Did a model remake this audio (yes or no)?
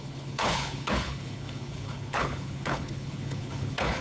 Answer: yes